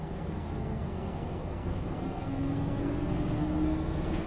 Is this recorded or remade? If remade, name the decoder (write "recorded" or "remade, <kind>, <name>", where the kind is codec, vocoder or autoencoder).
remade, codec, SNAC